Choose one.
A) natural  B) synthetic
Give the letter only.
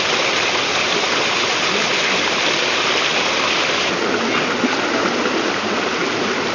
A